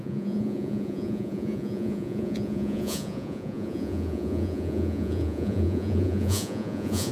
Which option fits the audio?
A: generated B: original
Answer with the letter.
A